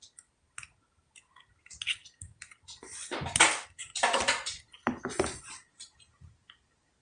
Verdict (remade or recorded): recorded